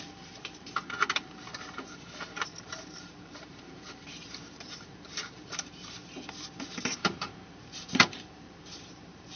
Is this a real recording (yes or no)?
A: no